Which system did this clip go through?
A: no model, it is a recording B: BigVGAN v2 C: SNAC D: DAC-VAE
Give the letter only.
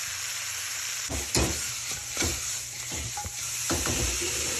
B